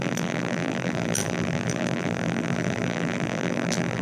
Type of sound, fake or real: fake